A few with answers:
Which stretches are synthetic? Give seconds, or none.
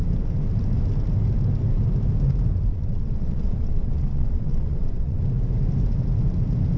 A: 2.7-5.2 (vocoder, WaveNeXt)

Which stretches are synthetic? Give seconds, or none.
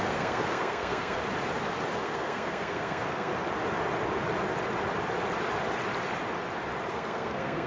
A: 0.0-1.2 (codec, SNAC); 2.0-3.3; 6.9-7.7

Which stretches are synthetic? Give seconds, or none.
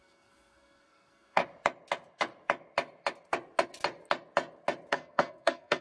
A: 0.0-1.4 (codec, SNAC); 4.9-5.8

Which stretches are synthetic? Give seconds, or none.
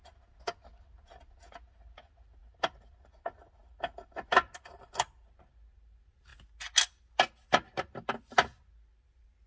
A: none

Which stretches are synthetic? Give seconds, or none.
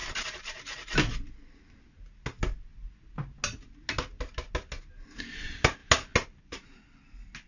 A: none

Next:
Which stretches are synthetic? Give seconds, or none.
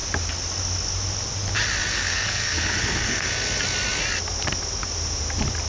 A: 1.9-3.3 (codec, SNAC)